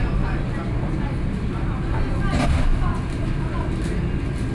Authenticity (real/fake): real